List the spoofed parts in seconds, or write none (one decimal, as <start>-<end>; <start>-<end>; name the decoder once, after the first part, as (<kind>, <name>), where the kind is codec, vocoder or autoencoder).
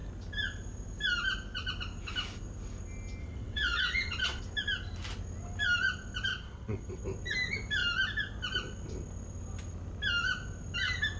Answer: 3.2-4.4 (vocoder, WaveNeXt); 6.3-7.0